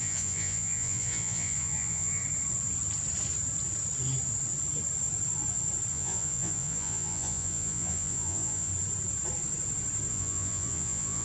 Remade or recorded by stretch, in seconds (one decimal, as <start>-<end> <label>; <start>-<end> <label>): 0.0-2.2 remade; 2.2-5.9 recorded; 5.9-8.7 remade; 8.7-10.1 recorded; 10.1-11.2 remade